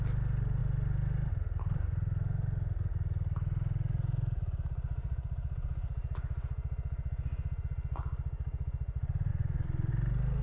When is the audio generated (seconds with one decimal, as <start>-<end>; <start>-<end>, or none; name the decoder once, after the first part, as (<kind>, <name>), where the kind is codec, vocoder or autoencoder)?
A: 9.3-9.9 (vocoder, WaveNeXt)